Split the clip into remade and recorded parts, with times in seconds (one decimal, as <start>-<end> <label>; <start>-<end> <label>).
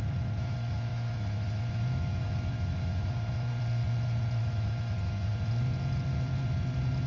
0.0-3.5 remade; 3.5-4.4 recorded; 4.4-5.3 remade; 5.3-7.1 recorded